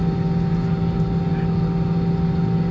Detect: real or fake real